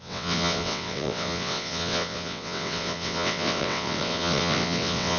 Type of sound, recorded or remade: remade